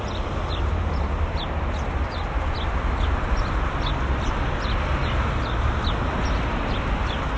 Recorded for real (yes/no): yes